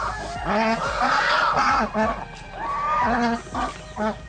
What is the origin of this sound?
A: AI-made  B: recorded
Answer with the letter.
B